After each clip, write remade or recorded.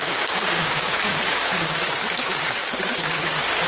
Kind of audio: remade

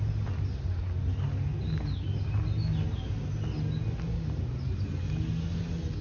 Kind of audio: recorded